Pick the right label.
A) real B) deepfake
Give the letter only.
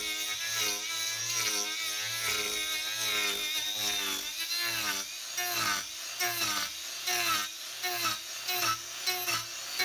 A